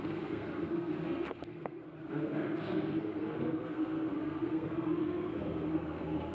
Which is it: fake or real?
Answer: fake